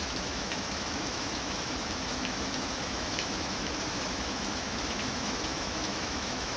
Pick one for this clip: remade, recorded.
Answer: remade